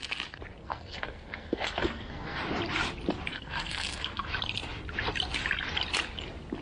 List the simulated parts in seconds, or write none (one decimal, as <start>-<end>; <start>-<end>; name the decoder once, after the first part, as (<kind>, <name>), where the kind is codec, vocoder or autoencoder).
0.6-2.4 (codec, SNAC); 3.3-4.3